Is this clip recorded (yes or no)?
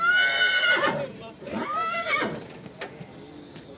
yes